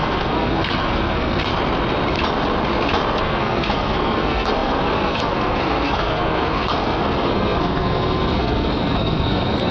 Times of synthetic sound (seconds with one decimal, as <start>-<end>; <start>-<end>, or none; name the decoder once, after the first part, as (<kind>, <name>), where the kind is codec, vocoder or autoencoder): 0.0-1.5 (codec, SNAC); 3.2-9.7